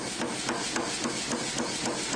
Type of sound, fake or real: real